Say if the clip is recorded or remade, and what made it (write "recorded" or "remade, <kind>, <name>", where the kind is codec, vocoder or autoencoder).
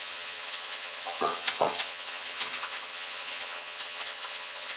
remade, vocoder, HiFi-GAN